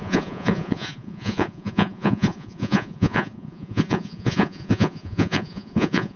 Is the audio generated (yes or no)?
yes